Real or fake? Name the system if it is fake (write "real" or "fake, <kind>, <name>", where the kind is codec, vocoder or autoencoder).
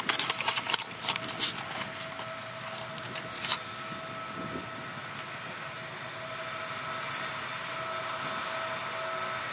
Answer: real